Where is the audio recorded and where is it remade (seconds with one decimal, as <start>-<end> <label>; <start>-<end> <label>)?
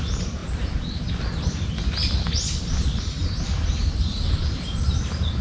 0.0-5.4 recorded